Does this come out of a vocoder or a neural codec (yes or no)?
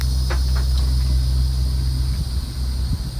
no